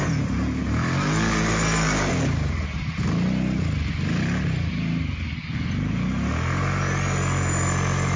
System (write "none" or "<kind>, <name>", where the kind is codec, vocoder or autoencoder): none